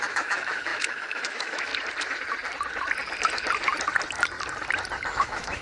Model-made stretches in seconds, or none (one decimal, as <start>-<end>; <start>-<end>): 0.0-1.7; 5.1-5.6